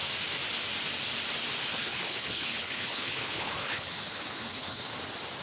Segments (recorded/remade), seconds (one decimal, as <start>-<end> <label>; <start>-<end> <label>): 0.0-1.7 recorded; 1.7-4.9 remade; 4.9-5.4 recorded